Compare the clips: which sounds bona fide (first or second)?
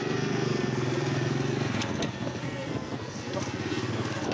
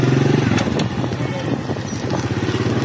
second